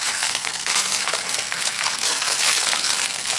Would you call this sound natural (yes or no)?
no